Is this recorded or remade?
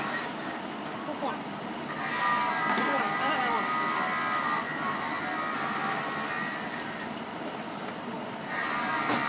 recorded